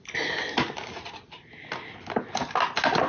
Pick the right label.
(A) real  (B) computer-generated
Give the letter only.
A